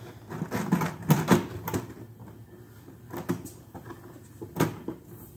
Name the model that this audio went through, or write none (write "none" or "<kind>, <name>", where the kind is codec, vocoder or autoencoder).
none